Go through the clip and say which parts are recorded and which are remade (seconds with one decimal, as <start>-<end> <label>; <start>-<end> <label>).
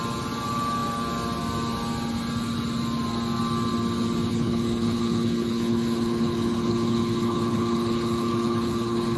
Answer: 0.0-4.3 recorded; 4.3-9.2 remade